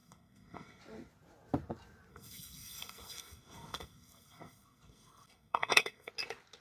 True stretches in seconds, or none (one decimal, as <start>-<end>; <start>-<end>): 0.8-2.1; 6.1-6.6